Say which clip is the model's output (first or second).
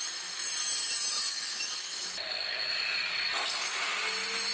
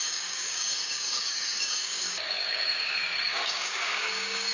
second